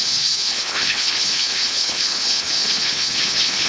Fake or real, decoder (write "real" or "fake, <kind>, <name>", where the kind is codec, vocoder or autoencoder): fake, codec, HILCodec